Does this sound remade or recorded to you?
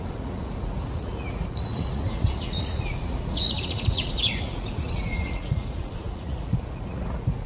remade